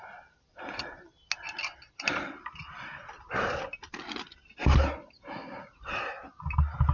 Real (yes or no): yes